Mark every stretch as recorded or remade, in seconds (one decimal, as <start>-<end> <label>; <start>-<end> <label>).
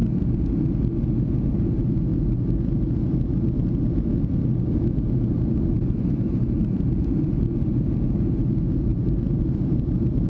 0.0-1.5 recorded; 1.5-2.1 remade; 2.1-5.9 recorded; 5.9-10.3 remade